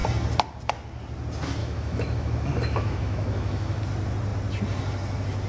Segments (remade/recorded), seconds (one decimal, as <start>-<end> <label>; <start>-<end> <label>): 0.0-1.6 recorded; 1.6-3.8 remade; 3.8-5.5 recorded